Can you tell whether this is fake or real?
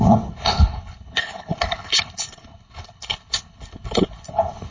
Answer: fake